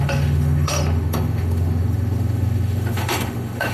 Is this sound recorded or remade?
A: remade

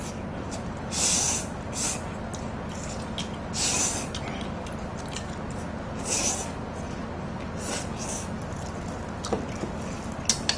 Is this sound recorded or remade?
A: recorded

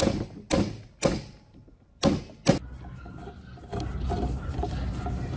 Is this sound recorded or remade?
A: recorded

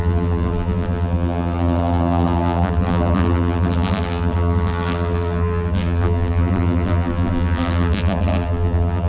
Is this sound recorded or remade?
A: remade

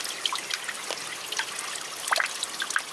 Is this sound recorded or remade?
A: recorded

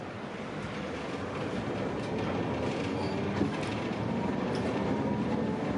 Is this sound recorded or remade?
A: recorded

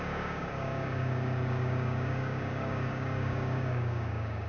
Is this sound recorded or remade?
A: remade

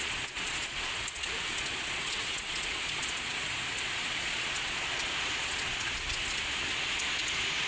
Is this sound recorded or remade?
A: remade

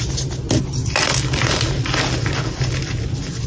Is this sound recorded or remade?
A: recorded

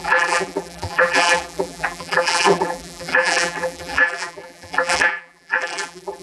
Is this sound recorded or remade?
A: remade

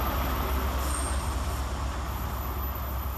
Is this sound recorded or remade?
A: recorded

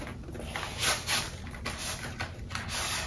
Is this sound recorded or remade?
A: recorded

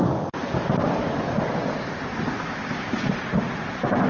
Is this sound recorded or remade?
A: recorded